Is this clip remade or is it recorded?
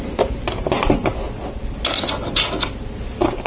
recorded